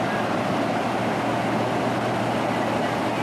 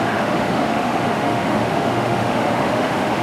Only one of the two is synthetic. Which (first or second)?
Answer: second